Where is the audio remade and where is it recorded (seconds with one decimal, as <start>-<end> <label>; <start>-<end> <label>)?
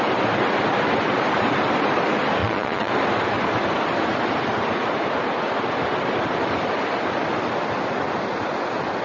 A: 0.0-2.4 recorded; 2.4-2.9 remade; 2.9-9.0 recorded